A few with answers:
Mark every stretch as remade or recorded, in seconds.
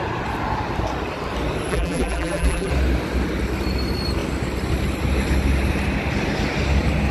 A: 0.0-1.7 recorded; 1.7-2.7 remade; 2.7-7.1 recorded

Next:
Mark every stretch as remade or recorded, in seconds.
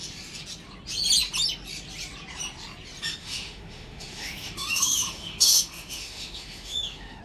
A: 0.0-3.2 recorded; 3.2-7.2 remade